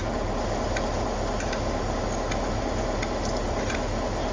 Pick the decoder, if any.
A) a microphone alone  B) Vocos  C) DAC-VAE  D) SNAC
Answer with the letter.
A